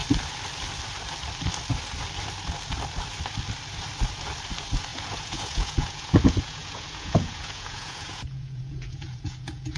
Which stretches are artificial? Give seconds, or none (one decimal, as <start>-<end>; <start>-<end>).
4.9-9.8